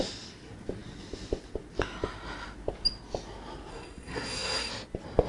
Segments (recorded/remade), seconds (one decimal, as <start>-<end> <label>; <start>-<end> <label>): 0.0-3.7 recorded; 3.7-4.7 remade; 4.7-5.3 recorded